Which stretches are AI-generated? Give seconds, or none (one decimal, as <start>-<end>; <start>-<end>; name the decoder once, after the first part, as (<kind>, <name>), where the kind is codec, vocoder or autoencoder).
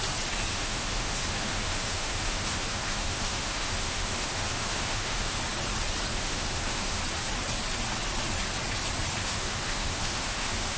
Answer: 0.5-5.4 (autoencoder, DAC-VAE); 6.1-7.0; 9.2-10.8